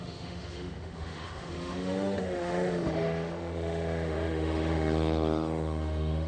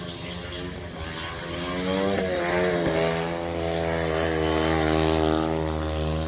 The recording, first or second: second